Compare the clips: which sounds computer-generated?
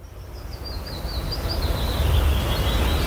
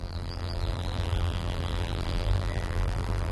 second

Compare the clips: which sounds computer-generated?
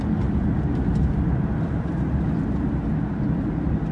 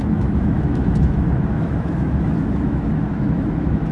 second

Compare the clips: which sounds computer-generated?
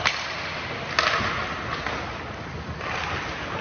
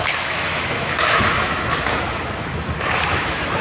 second